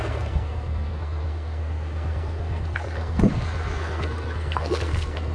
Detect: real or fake fake